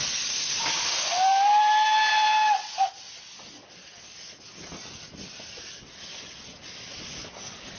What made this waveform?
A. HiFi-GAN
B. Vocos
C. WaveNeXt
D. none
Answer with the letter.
D